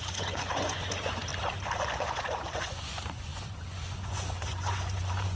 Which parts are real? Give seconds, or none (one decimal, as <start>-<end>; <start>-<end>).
1.3-2.0